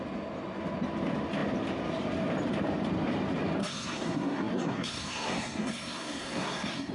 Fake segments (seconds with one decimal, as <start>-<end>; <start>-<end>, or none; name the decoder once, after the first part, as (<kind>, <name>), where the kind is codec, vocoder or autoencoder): 3.6-6.9 (codec, SNAC)